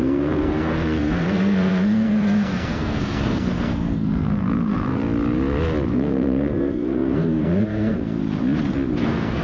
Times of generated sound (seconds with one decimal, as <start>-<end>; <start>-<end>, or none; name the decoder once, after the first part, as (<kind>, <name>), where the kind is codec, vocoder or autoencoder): 0.0-5.0 (codec, SNAC); 5.9-8.2; 9.0-9.4